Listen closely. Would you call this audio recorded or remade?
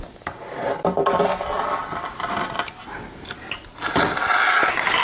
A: recorded